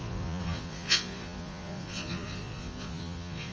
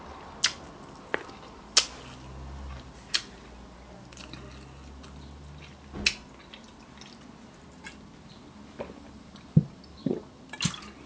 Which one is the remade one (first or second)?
first